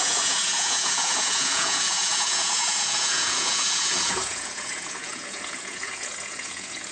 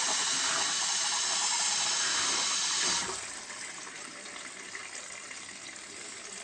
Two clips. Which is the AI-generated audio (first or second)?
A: first